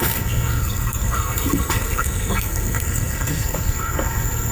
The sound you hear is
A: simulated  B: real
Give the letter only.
A